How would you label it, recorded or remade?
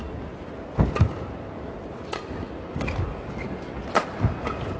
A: recorded